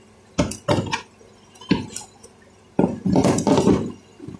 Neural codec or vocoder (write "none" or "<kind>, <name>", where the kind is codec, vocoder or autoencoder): none